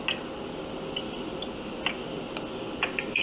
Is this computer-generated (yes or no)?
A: no